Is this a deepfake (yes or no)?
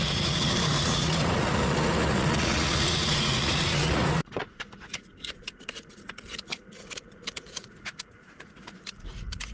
yes